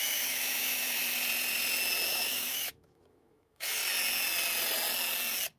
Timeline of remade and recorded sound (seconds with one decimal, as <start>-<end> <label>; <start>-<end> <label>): 0.0-1.0 remade; 1.0-2.1 recorded; 2.1-3.8 remade; 3.8-5.6 recorded